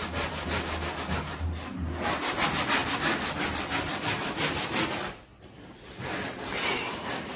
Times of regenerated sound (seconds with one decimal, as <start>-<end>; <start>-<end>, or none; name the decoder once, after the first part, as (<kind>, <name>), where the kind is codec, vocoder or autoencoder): none